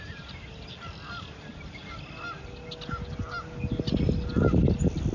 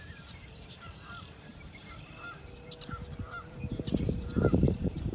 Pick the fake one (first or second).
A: second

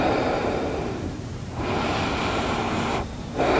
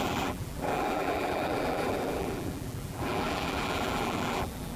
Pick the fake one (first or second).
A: second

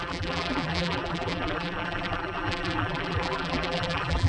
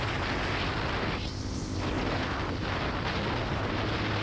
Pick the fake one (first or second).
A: first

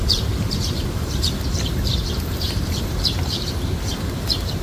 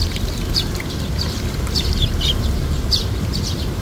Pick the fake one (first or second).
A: first